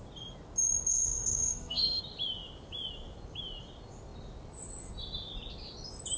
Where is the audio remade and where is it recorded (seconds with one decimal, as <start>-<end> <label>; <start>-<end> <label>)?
0.0-0.9 recorded; 0.9-2.0 remade; 2.0-6.2 recorded